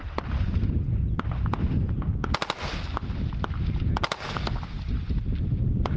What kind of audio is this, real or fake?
real